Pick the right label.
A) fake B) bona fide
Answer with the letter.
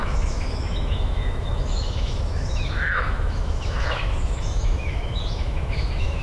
A